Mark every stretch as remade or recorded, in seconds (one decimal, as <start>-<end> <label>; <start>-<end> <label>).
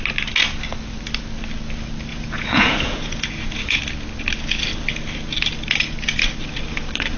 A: 0.0-2.1 recorded; 2.1-3.8 remade; 3.8-7.2 recorded